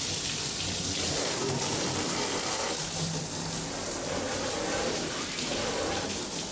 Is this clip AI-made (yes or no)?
no